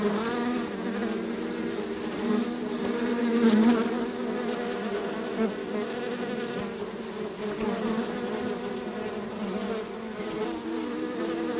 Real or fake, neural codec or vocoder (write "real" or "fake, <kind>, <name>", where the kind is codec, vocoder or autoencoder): real